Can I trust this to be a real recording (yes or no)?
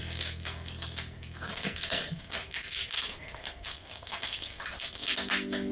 no